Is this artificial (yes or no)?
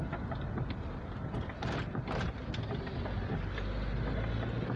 no